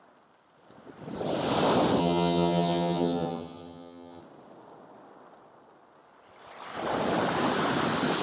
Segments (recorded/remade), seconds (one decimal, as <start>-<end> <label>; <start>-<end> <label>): 0.0-2.0 recorded; 2.0-4.2 remade; 4.2-8.2 recorded